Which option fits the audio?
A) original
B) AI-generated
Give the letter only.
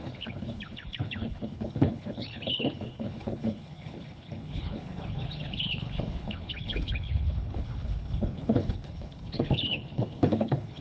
B